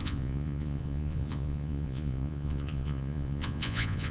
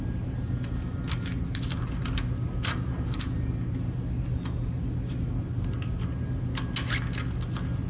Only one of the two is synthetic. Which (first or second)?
first